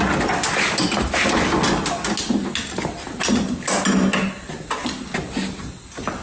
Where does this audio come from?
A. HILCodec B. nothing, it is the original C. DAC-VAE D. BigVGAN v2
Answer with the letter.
B